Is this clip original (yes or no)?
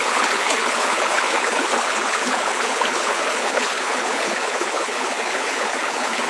no